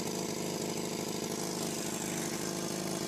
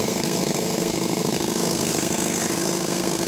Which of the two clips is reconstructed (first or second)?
second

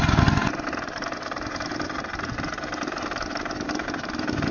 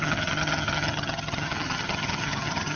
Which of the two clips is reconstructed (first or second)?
second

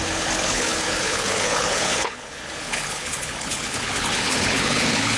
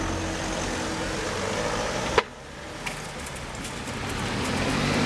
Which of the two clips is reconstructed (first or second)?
first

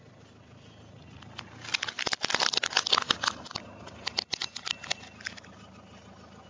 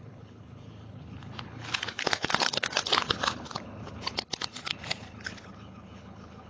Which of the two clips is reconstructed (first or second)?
second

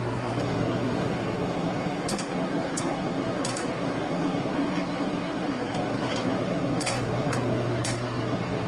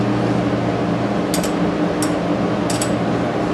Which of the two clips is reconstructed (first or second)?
first